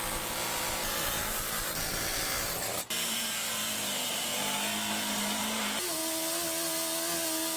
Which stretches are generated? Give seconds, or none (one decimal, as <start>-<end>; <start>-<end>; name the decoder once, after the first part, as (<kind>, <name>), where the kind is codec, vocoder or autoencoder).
0.0-4.3 (vocoder, BigVGAN v2); 5.1-6.0